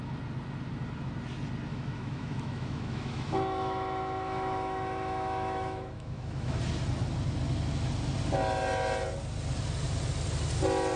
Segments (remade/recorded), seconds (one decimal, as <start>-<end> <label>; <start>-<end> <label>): 0.0-1.7 recorded; 1.7-6.6 remade; 6.6-11.0 recorded